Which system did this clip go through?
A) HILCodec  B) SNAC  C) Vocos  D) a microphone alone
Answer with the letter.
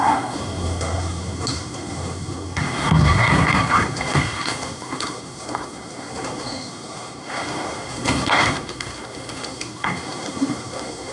B